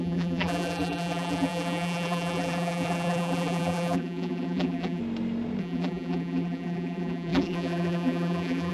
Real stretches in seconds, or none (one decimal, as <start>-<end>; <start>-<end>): 5.0-5.6